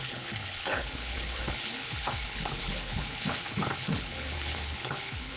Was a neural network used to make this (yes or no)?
yes